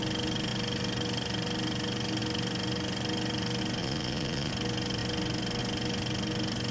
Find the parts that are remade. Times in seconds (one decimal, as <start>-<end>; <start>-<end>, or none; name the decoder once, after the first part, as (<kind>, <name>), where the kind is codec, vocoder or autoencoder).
3.8-4.5 (vocoder, Vocos)